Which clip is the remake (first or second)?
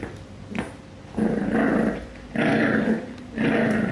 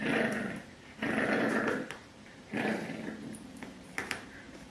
second